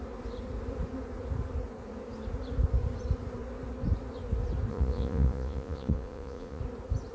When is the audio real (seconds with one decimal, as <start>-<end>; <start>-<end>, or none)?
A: 0.0-4.7; 6.6-7.1